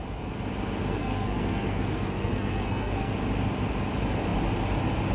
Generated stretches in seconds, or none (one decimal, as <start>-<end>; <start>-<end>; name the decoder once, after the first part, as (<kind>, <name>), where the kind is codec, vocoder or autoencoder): 0.8-3.1 (codec, SNAC)